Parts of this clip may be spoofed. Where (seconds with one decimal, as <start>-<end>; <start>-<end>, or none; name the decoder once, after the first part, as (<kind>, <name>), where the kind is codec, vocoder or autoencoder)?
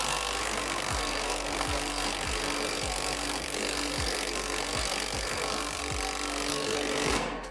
0.0-5.8 (codec, SNAC); 6.5-7.5